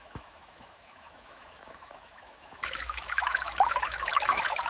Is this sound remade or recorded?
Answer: remade